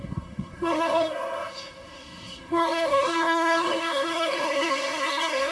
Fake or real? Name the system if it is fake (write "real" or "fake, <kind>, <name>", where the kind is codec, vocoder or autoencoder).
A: fake, codec, SNAC